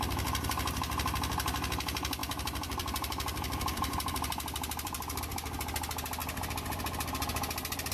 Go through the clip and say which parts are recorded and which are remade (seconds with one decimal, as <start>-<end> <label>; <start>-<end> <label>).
0.0-2.2 recorded; 2.2-5.2 remade; 5.2-7.9 recorded